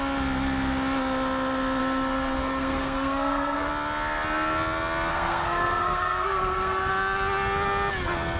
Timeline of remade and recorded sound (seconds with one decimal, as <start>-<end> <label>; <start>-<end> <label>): 0.0-1.8 recorded; 1.8-3.7 remade; 3.7-5.1 recorded; 5.1-6.9 remade; 6.9-8.4 recorded